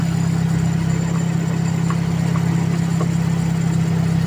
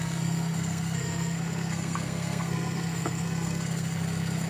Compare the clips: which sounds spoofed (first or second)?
second